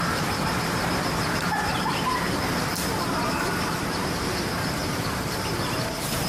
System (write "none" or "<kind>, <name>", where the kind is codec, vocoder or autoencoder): vocoder, BigVGAN v2